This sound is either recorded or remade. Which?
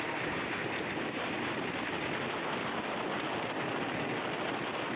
recorded